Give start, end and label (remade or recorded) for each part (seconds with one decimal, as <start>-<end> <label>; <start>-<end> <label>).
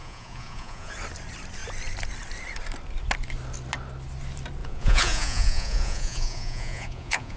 0.0-0.9 remade; 0.9-4.6 recorded; 4.6-7.4 remade